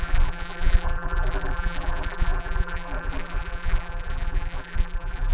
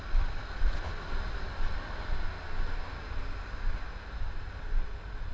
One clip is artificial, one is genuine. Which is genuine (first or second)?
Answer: second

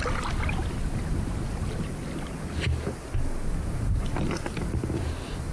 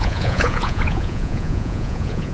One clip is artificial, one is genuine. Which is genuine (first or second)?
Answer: first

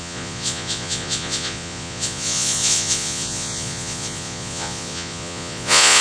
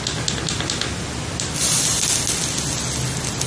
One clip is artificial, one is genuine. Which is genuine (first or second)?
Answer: second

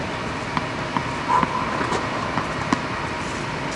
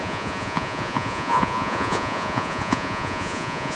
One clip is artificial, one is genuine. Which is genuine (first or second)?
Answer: first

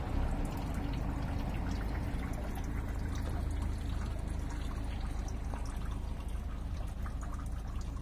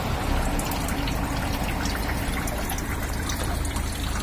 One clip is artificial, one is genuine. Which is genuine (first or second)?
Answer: first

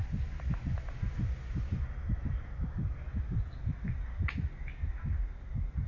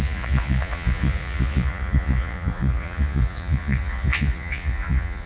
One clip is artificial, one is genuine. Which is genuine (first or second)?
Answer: first